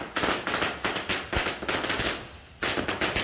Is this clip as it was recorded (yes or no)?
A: yes